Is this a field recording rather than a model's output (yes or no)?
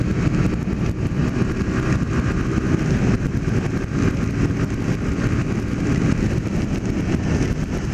yes